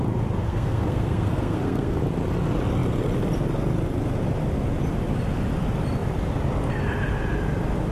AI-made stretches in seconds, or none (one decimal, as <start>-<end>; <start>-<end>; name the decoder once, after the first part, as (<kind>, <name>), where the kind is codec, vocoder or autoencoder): 0.4-2.0 (codec, SNAC)